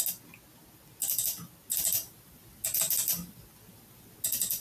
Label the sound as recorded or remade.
recorded